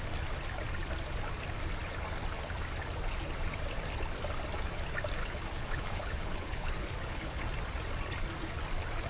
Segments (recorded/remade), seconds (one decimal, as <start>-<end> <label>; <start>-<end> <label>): 0.0-5.2 recorded; 5.2-7.4 remade; 7.4-9.1 recorded